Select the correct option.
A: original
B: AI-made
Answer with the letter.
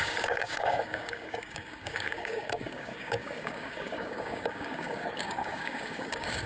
B